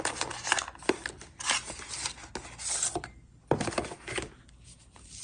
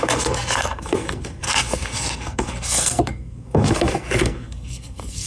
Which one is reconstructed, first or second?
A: second